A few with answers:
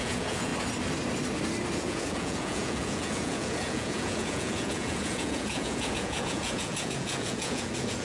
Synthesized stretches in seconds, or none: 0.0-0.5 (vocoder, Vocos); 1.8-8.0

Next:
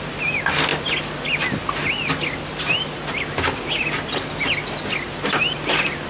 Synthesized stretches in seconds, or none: none

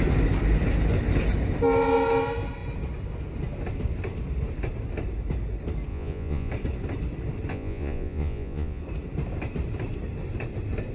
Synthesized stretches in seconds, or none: 5.9-6.5 (vocoder, Vocos); 7.5-8.8

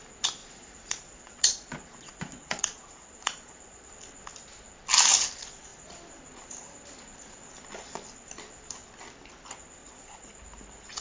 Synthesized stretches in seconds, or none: 0.4-3.9 (vocoder, Vocos); 9.8-10.4

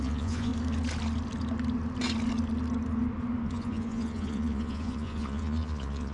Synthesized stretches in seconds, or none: 0.0-0.5 (vocoder, Vocos); 3.4-6.1

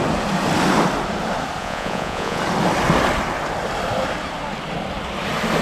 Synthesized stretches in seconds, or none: 1.6-2.4 (vocoder, Vocos)

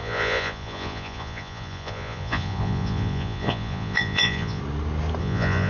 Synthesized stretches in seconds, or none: 0.0-4.6 (vocoder, Vocos); 5.2-5.7

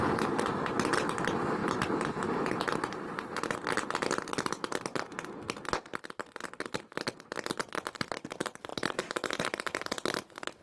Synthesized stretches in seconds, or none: none